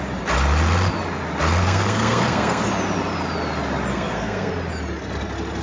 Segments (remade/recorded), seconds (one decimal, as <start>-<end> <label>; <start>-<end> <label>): 0.0-1.6 recorded; 1.6-2.7 remade; 2.7-3.9 recorded; 3.9-4.5 remade; 4.5-5.6 recorded

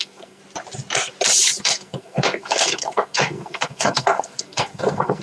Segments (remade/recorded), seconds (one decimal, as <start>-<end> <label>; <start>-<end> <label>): 0.0-0.4 remade; 0.4-1.6 recorded; 1.6-5.2 remade

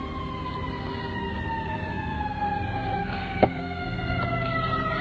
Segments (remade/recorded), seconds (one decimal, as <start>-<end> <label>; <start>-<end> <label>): 0.0-1.9 recorded; 1.9-2.4 remade; 2.4-3.0 recorded; 3.0-4.2 remade; 4.2-5.0 recorded